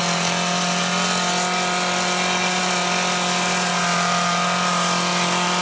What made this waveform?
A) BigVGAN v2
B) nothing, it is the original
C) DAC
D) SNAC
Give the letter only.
B